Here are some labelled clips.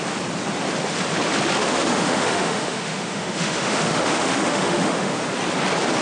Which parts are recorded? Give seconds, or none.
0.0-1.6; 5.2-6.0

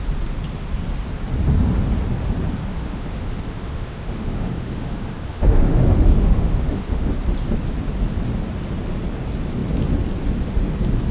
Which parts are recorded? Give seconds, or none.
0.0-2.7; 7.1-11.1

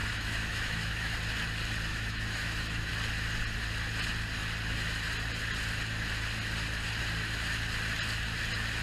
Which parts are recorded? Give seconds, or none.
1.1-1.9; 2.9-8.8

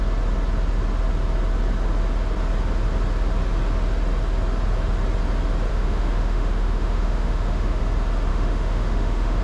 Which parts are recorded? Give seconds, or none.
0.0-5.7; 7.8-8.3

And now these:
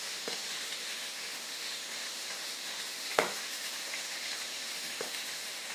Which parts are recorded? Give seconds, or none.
none

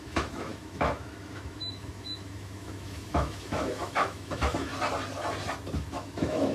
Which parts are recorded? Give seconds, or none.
4.7-5.9

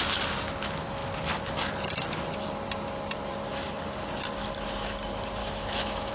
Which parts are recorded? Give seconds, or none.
0.0-5.4

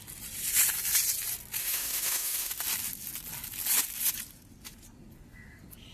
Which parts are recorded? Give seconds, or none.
0.0-1.6; 2.5-5.9